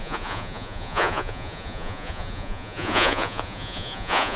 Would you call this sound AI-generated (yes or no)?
yes